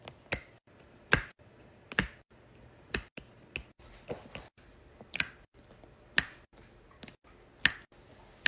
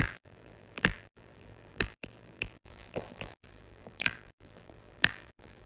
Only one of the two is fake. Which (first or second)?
second